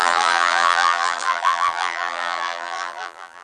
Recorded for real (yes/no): no